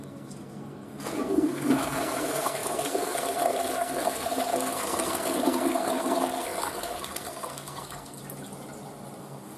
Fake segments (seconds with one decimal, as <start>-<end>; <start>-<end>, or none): 0.0-8.2; 9.2-9.6